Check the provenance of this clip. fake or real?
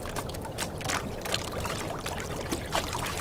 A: real